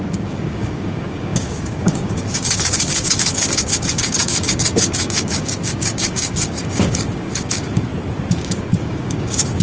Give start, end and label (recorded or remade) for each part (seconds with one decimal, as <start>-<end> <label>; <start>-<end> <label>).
0.0-7.9 remade; 7.9-8.4 recorded; 8.4-9.6 remade